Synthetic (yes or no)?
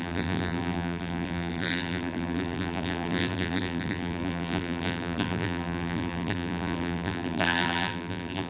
yes